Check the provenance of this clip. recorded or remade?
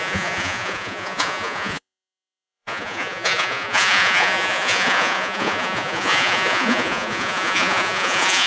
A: remade